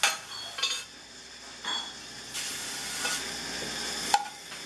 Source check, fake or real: real